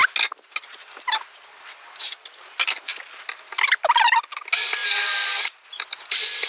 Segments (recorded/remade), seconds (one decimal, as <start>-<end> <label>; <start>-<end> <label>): 0.0-6.5 recorded